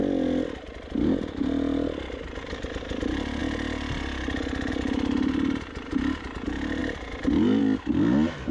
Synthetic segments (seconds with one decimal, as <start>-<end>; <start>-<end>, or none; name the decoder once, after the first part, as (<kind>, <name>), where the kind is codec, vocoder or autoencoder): none